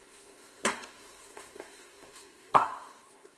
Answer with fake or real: fake